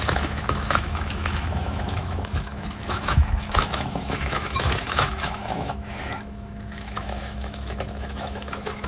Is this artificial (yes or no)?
yes